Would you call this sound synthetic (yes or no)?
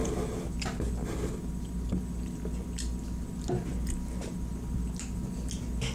no